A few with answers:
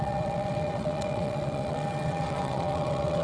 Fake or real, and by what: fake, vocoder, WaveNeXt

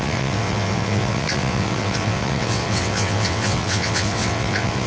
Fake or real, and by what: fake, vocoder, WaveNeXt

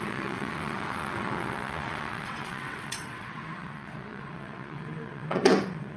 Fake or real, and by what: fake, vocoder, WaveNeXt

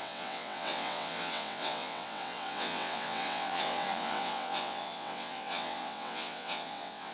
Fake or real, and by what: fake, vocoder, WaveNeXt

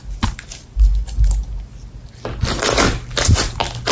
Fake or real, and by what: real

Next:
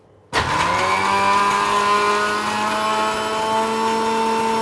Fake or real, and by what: real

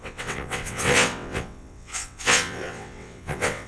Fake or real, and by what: fake, vocoder, WaveNeXt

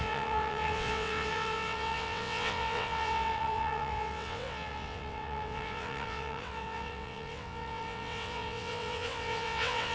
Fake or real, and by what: fake, vocoder, WaveNeXt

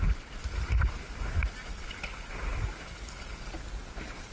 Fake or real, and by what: real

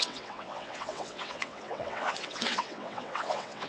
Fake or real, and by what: fake, vocoder, WaveNeXt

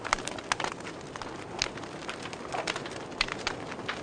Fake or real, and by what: real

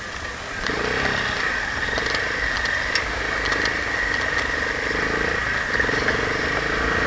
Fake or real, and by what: real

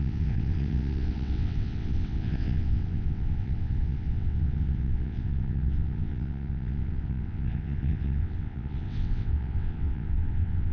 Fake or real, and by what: fake, vocoder, WaveNeXt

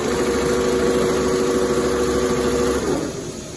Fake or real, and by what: real